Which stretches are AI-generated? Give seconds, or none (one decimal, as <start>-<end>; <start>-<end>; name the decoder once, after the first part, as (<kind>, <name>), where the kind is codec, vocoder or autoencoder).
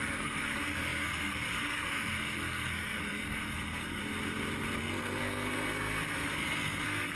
0.0-4.0 (codec, SNAC); 4.8-7.2